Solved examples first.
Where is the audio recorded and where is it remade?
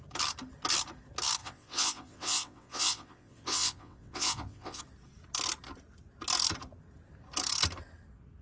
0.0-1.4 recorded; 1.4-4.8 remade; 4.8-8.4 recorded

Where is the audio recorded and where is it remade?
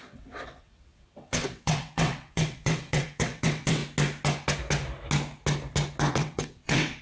0.0-3.8 remade; 3.8-6.1 recorded; 6.1-7.0 remade